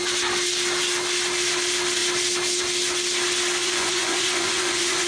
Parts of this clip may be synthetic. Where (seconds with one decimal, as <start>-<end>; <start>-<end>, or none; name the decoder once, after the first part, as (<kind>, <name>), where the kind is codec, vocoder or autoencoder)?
3.6-5.1 (vocoder, Vocos)